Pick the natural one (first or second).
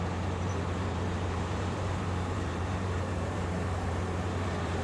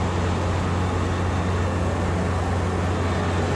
second